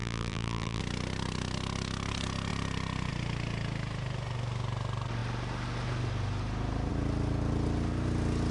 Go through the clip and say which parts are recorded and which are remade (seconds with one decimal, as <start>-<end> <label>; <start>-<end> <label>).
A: 0.0-0.8 remade; 0.8-8.5 recorded